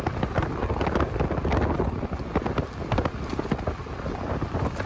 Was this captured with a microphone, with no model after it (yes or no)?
yes